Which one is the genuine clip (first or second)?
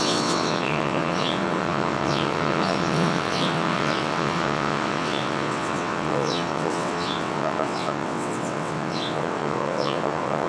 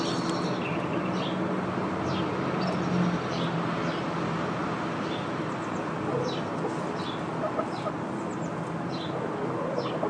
second